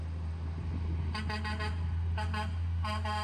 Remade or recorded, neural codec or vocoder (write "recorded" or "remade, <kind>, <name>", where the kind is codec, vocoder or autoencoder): recorded